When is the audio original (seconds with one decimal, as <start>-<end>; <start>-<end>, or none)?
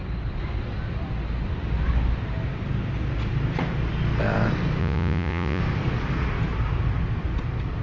0.0-4.8; 5.6-7.8